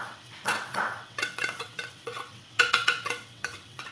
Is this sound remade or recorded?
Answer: remade